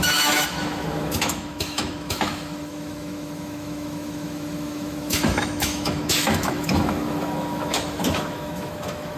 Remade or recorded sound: remade